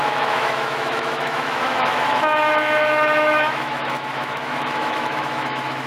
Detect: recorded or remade remade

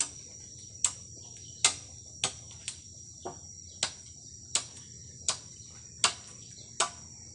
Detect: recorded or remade recorded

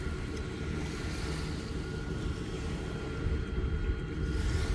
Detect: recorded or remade recorded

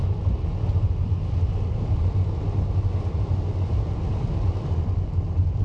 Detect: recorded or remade recorded